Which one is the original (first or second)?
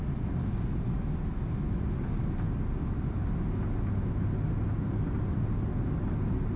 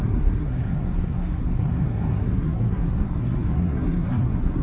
first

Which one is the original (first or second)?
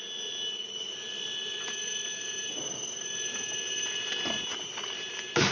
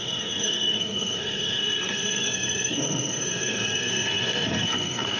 first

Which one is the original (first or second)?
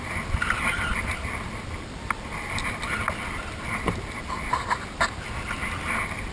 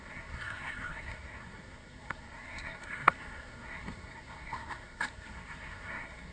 first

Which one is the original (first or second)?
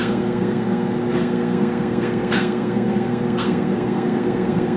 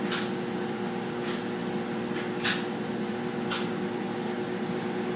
second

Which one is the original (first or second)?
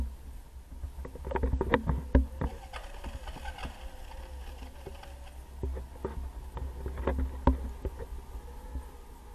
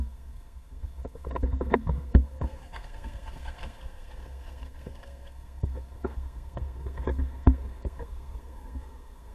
first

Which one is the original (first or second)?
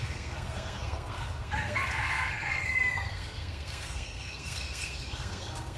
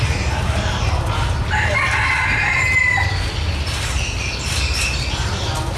second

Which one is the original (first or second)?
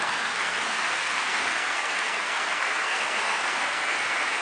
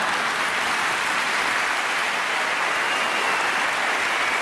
second